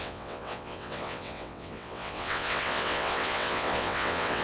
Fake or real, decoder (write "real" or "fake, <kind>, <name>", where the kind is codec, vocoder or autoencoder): fake, vocoder, WaveNeXt